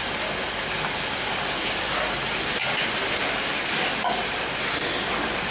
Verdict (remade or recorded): recorded